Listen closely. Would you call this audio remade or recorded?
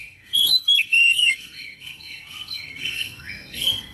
remade